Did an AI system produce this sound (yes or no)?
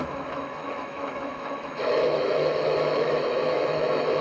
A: yes